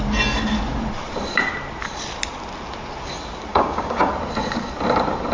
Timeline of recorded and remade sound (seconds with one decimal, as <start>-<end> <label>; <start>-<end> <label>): 0.0-3.5 recorded; 3.5-4.1 remade; 4.1-5.3 recorded